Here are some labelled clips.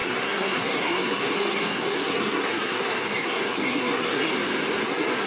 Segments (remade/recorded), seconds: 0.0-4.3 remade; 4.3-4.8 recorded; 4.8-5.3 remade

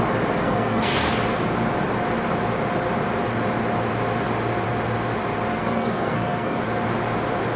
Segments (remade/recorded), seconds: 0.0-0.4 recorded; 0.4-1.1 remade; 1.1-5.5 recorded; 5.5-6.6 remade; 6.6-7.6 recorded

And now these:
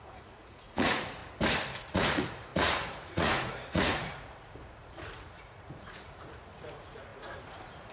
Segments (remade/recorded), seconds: 0.0-1.2 remade; 1.2-1.8 recorded; 1.8-7.9 remade

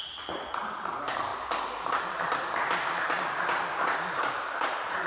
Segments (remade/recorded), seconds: 0.0-1.3 remade; 1.3-4.2 recorded; 4.2-5.1 remade

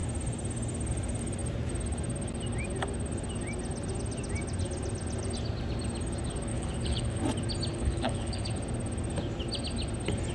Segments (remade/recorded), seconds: 0.0-6.5 recorded; 6.5-7.2 remade; 7.2-7.7 recorded; 7.7-8.5 remade; 8.5-10.3 recorded